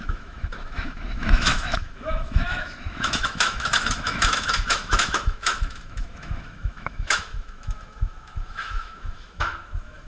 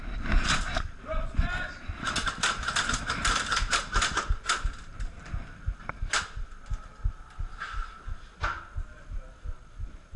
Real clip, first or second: second